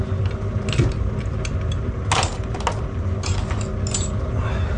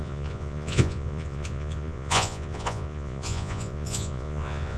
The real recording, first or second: first